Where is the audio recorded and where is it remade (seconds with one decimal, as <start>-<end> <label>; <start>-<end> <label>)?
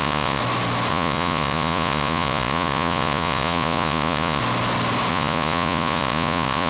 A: 0.0-0.4 remade; 0.4-0.9 recorded; 0.9-4.4 remade; 4.4-5.1 recorded; 5.1-6.7 remade